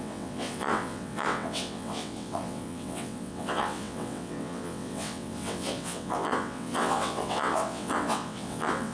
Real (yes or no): no